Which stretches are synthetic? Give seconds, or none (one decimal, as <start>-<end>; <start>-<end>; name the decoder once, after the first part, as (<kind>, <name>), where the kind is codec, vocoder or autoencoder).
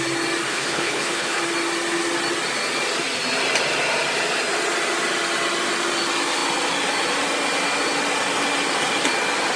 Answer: 0.5-1.4 (codec, HILCodec)